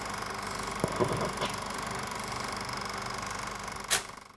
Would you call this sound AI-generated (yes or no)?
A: no